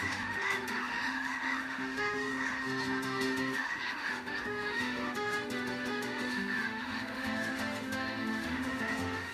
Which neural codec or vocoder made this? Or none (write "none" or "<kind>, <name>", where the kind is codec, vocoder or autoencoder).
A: autoencoder, DAC-VAE